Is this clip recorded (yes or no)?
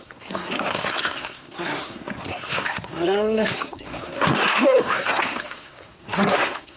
no